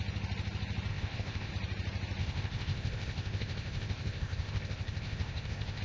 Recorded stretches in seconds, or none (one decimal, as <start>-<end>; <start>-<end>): 0.0-0.9; 1.5-2.2